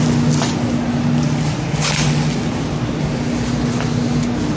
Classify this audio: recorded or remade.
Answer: recorded